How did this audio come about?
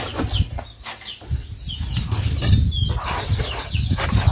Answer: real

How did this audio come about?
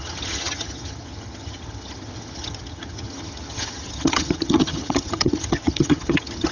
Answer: fake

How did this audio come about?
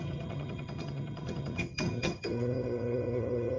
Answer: fake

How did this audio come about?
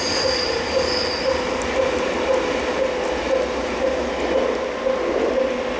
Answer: real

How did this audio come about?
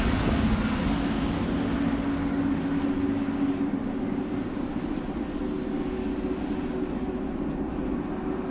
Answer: real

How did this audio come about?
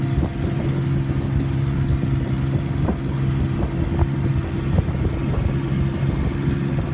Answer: real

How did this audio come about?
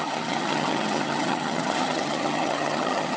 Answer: fake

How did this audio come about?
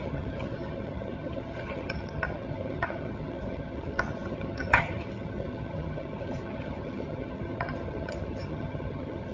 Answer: fake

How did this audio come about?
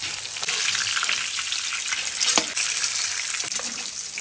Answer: real